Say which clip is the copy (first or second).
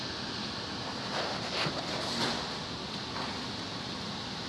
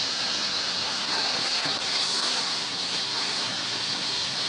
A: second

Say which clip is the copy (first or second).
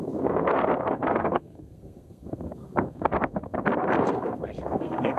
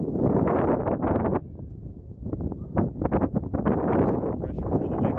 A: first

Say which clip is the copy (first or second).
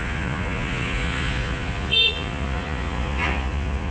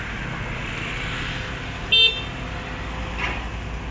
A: first